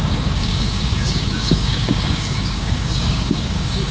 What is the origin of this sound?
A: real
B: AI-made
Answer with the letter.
B